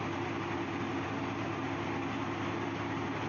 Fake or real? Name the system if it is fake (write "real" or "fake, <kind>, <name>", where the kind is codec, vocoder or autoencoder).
real